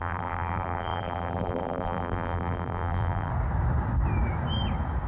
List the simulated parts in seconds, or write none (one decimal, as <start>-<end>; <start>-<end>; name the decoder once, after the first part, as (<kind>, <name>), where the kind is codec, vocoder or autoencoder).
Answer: 0.0-3.3 (vocoder, BigVGAN v2)